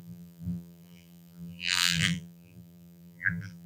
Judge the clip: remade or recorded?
remade